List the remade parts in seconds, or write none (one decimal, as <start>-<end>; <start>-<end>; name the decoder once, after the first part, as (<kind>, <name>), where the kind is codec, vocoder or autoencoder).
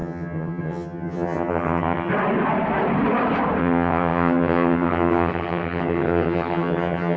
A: 0.0-2.1 (vocoder, HiFi-GAN); 3.6-7.2